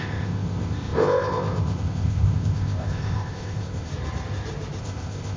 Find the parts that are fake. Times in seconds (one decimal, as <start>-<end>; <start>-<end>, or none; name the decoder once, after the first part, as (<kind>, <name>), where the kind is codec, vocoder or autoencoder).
0.0-3.9 (codec, ZipCodec); 4.8-5.4